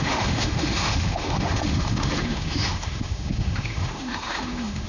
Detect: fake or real fake